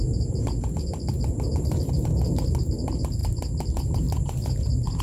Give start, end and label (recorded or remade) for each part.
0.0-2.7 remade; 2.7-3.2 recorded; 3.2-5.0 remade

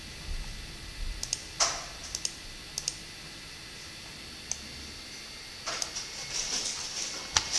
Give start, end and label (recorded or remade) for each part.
0.0-7.6 recorded

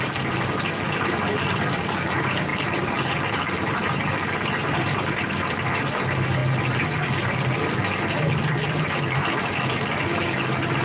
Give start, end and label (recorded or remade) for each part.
0.0-4.6 recorded; 4.6-5.2 remade; 5.2-10.8 recorded

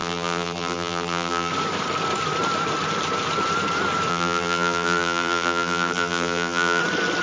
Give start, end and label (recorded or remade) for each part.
0.0-1.5 remade; 1.5-4.1 recorded; 4.1-6.8 remade; 6.8-7.2 recorded

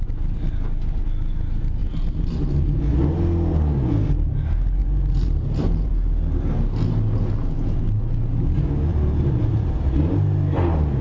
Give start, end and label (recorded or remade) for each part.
0.0-4.8 recorded; 4.8-5.9 remade; 5.9-8.9 recorded; 8.9-9.9 remade; 9.9-11.0 recorded

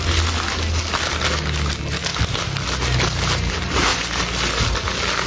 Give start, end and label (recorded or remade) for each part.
0.0-5.3 recorded

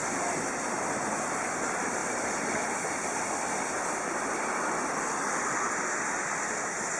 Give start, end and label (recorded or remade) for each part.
0.0-7.0 recorded